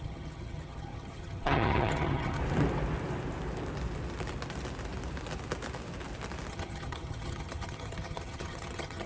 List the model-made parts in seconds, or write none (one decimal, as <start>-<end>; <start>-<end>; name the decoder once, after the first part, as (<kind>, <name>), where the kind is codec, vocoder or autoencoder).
0.0-2.4 (vocoder, HiFi-GAN); 6.5-9.1